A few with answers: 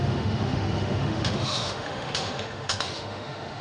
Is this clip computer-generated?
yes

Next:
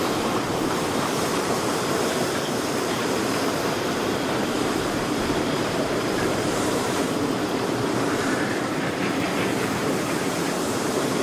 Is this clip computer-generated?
yes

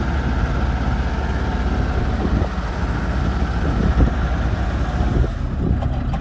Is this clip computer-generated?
no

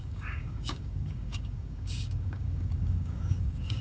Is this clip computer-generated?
yes